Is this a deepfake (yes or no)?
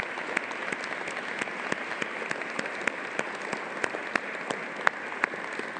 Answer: no